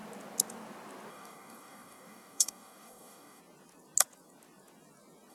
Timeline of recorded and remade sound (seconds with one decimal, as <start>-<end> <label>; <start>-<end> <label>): 0.0-1.1 recorded; 1.1-3.4 remade; 3.4-5.3 recorded